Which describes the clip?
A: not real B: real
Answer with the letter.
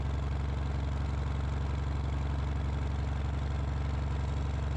B